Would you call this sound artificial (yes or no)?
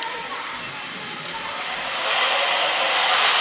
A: no